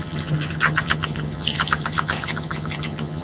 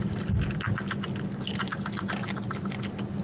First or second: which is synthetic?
first